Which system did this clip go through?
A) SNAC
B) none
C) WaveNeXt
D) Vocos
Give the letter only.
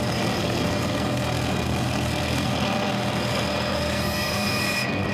A